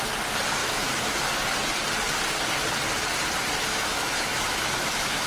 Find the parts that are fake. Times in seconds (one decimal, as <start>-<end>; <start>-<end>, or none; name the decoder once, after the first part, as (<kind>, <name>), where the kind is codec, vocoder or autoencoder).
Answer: 0.6-1.2 (autoencoder, DAC-VAE); 3.7-5.3